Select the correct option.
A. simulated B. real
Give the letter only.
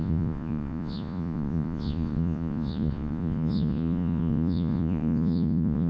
A